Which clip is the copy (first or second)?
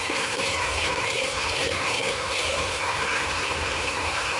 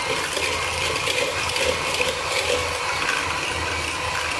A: first